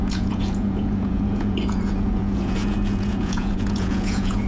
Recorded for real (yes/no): no